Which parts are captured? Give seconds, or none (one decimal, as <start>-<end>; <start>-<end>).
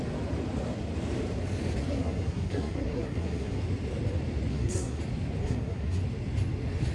0.0-1.9; 3.6-4.5; 5.0-5.4; 6.0-6.9